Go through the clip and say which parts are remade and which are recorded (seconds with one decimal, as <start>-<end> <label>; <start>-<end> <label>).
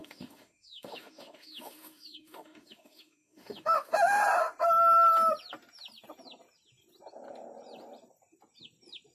0.0-4.2 remade; 4.2-9.1 recorded